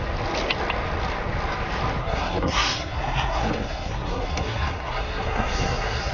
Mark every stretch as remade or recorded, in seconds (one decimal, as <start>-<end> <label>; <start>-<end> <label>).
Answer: 0.0-2.0 recorded; 2.0-6.1 remade